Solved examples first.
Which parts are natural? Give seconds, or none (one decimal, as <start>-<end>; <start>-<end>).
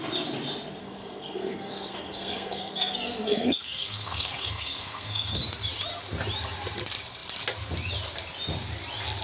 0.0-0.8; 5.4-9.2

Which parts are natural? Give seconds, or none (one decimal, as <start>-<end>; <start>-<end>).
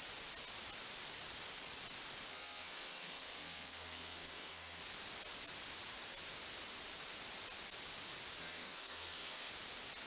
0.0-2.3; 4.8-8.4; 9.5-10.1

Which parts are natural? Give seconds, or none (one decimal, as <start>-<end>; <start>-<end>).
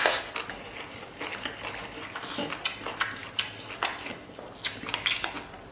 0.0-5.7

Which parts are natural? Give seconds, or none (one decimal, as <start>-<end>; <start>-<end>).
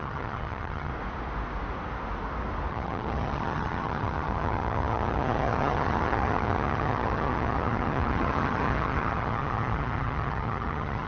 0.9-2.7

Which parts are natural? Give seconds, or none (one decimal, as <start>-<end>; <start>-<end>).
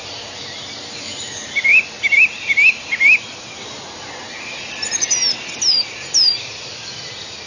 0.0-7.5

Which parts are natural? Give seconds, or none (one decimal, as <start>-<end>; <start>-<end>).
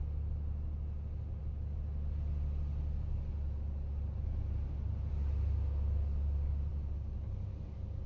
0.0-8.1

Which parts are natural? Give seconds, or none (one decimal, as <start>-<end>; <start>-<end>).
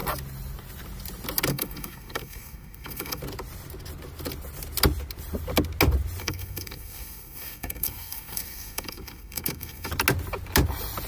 0.0-1.5; 3.2-6.2; 9.9-11.1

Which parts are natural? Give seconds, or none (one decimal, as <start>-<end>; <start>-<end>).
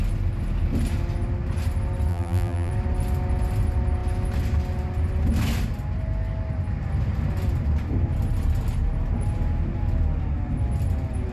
0.0-2.1; 2.7-11.3